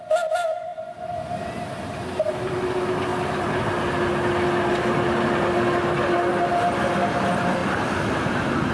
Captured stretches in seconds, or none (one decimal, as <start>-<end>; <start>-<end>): 0.0-0.7; 1.9-3.1; 3.6-7.6